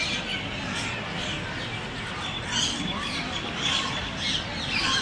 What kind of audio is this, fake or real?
real